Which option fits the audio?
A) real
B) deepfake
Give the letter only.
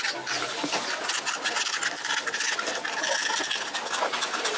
A